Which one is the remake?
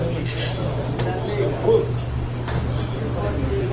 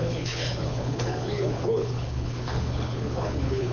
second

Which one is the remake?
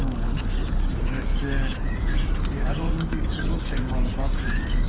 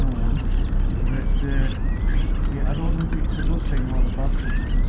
first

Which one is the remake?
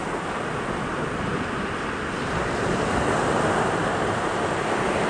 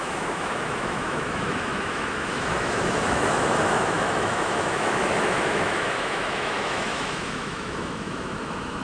second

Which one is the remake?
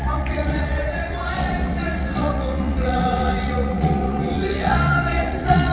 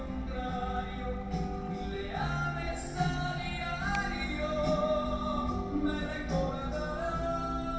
first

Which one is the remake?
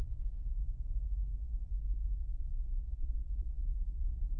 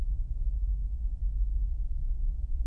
first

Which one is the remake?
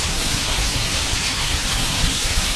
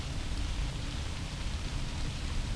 first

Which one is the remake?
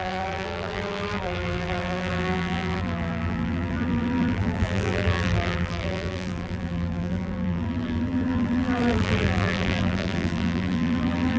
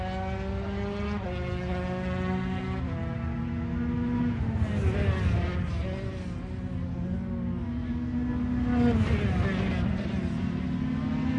first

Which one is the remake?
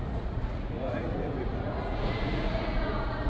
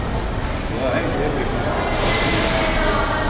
first